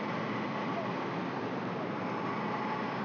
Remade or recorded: recorded